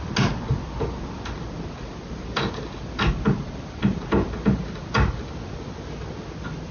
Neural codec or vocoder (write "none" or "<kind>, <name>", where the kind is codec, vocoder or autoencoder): none